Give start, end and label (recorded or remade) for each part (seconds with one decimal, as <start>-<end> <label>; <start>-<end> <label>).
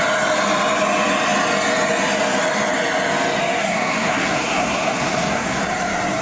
0.0-3.6 recorded; 3.6-5.6 remade; 5.6-6.2 recorded